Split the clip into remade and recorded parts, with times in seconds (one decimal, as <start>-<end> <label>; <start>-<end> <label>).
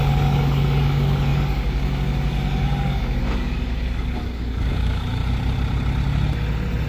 0.0-5.2 remade; 5.2-6.9 recorded